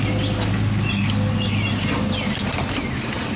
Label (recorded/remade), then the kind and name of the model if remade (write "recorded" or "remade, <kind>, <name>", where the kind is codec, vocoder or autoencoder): recorded